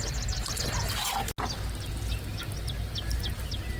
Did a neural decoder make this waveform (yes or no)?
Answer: no